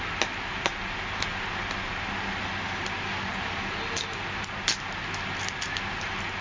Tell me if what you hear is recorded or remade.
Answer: recorded